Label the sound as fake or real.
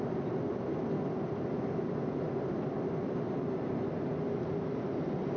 real